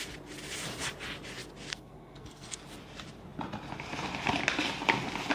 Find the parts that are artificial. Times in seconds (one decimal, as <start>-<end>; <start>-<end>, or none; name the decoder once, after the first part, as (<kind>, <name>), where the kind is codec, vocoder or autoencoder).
1.7-2.7 (codec, SNAC)